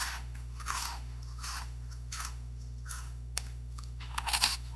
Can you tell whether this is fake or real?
fake